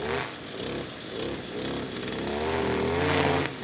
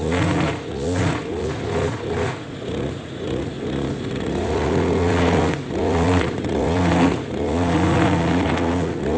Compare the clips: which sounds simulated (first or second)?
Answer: second